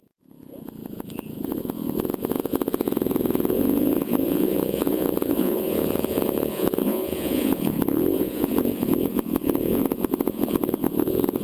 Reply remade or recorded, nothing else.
remade